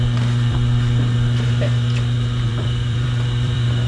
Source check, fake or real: fake